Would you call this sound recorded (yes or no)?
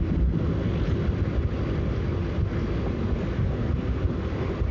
yes